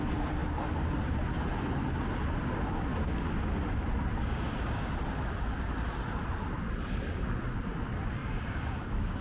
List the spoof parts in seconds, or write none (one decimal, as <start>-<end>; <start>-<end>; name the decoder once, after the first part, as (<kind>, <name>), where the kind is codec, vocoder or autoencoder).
2.9-3.4 (codec, DAC); 4.1-4.9; 8.2-9.2